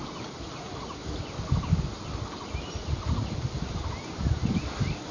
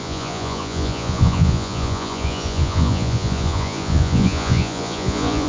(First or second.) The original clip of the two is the first